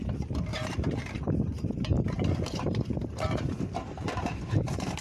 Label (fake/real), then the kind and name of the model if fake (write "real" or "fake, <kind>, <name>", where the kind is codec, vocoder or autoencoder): fake, vocoder, BigVGAN v2